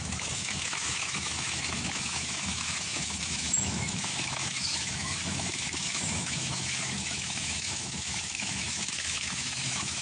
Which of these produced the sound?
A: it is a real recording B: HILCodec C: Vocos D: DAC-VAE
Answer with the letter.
D